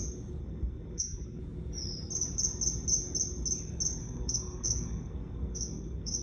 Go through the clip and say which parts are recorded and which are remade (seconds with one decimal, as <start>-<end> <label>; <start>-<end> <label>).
0.0-0.4 recorded; 0.4-1.4 remade; 1.4-4.0 recorded; 4.0-6.2 remade